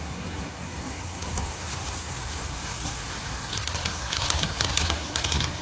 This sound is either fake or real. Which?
fake